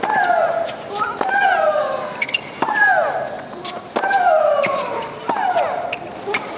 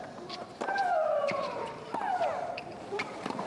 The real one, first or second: first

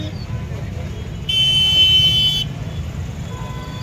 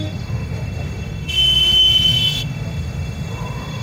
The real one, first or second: first